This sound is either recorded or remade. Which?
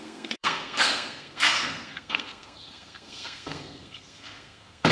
remade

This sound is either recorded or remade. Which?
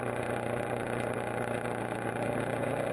remade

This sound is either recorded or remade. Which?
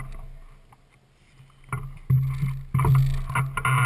recorded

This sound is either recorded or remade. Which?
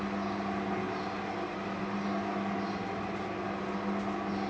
recorded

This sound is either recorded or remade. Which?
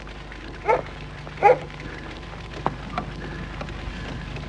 recorded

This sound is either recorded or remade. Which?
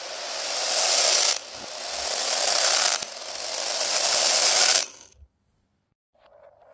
recorded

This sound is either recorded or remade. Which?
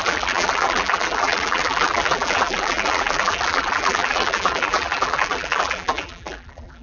remade